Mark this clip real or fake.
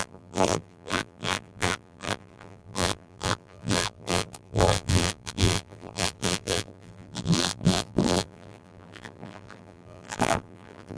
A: fake